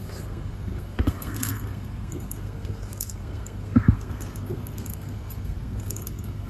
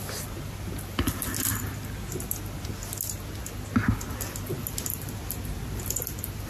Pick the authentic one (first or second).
second